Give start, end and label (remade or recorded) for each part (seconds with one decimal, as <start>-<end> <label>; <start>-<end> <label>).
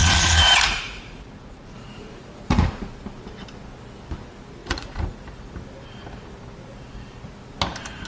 0.0-2.9 remade; 2.9-4.6 recorded; 4.6-5.5 remade; 5.5-8.1 recorded